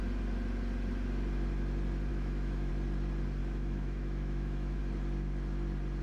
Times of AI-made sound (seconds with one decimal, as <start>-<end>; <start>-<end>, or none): 2.1-2.7; 3.4-4.8